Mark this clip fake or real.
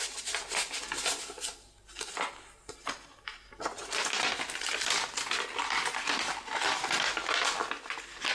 real